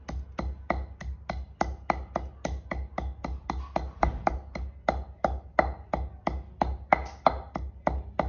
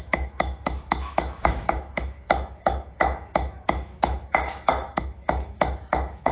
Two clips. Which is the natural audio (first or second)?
first